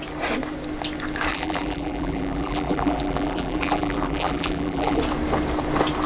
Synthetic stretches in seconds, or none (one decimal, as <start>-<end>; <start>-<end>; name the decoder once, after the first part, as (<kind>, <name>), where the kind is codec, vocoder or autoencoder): 1.3-5.0 (vocoder, BigVGAN v2)